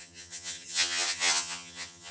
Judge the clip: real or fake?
fake